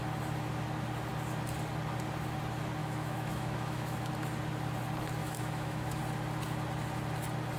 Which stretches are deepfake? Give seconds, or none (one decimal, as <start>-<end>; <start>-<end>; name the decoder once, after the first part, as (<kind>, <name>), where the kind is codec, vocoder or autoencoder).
2.8-4.1 (autoencoder, DAC-VAE); 5.2-6.0